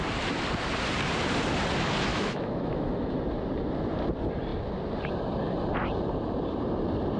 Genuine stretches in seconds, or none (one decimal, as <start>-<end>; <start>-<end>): 0.0-2.1; 3.2-7.2